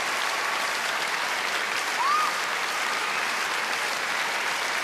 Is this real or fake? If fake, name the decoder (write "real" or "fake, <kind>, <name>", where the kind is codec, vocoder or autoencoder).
real